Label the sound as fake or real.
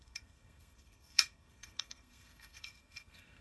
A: fake